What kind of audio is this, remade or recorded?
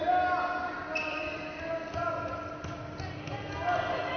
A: recorded